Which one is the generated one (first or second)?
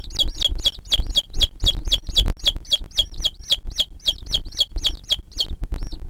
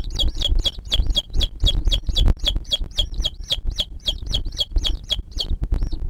second